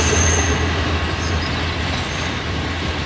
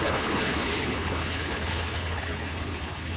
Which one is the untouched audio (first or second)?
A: first